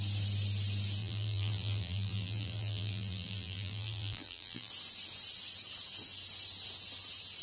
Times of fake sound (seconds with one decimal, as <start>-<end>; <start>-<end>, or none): 1.0-4.7